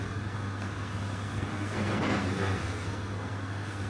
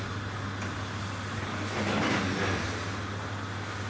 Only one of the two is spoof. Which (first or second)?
first